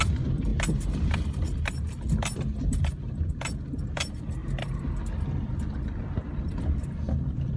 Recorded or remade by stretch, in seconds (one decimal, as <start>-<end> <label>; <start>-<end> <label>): 0.0-0.5 remade; 0.5-1.1 recorded; 1.1-4.4 remade; 4.4-6.4 recorded; 6.4-7.6 remade